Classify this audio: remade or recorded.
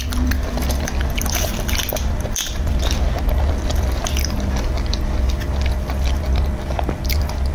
recorded